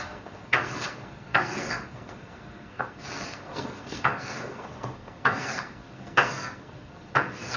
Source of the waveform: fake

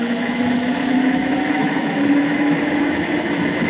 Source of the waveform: fake